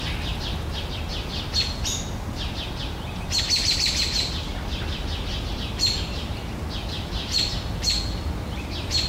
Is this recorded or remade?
recorded